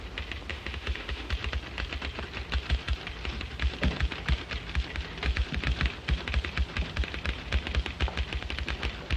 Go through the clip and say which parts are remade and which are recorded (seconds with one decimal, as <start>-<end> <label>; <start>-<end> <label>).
0.0-0.5 recorded; 0.5-1.3 remade; 1.3-9.2 recorded